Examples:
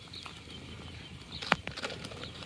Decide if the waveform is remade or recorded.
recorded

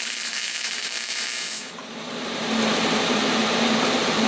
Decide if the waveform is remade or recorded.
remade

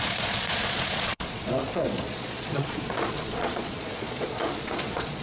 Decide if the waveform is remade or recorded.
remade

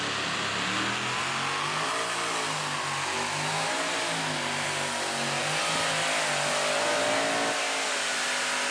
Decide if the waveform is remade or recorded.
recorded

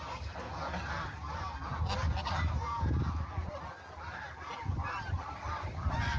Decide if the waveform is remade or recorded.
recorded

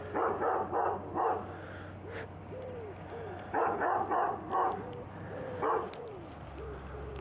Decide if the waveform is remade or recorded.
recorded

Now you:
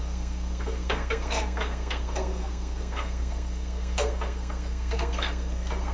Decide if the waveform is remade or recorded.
remade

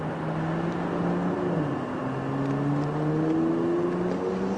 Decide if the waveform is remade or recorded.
recorded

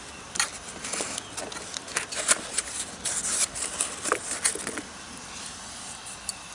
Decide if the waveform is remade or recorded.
recorded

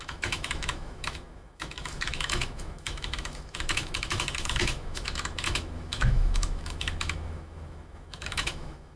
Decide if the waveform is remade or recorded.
remade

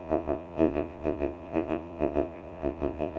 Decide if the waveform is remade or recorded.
remade